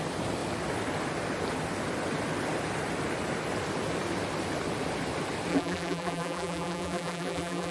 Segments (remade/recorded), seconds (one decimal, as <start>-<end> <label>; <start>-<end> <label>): 0.0-5.5 recorded; 5.5-7.7 remade